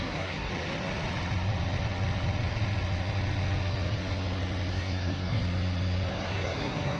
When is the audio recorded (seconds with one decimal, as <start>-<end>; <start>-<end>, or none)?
0.5-4.7; 5.4-6.1